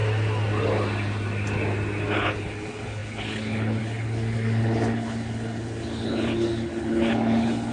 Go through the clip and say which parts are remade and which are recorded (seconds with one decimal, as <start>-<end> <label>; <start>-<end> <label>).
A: 0.0-2.1 recorded; 2.1-7.7 remade